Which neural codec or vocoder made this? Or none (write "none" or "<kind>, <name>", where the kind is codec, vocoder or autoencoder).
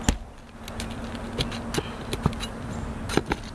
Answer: none